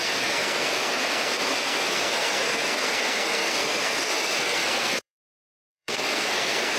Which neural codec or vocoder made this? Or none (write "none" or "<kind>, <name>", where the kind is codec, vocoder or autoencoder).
codec, SNAC